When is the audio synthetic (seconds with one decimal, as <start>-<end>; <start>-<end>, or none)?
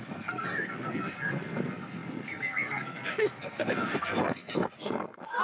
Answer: 0.0-5.4